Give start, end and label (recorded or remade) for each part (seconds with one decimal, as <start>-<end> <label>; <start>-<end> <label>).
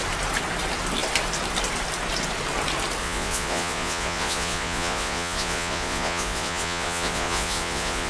0.0-3.0 recorded; 3.0-8.1 remade